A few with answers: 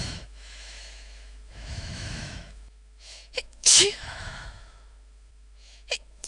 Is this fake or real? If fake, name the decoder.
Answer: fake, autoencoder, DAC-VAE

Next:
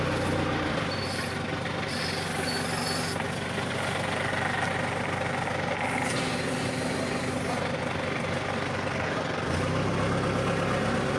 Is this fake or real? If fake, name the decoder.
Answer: real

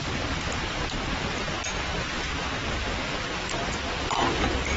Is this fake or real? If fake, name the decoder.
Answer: real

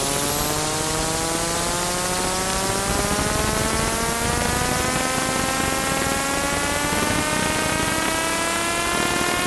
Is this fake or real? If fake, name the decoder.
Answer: real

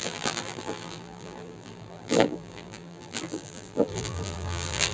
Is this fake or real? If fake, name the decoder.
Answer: fake, vocoder, BigVGAN v2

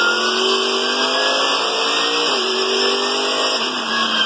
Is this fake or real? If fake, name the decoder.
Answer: real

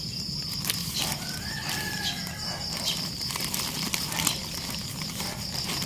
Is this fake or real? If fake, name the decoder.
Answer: real